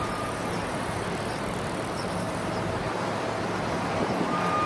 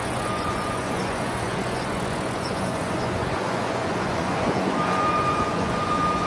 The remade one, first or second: second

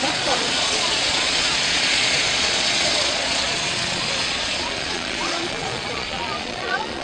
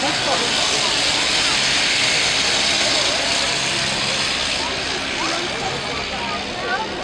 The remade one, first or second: first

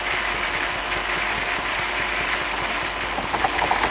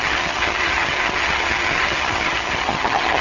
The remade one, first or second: second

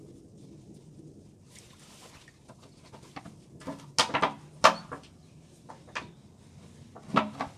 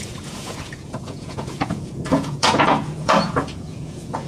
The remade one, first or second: second